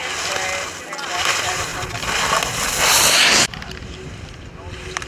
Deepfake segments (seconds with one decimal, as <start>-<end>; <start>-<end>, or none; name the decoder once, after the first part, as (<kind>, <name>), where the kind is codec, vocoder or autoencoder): none